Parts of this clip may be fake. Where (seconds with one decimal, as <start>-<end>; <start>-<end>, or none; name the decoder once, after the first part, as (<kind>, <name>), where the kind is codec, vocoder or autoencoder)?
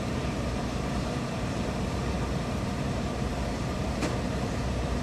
0.0-5.0 (vocoder, BigVGAN v2)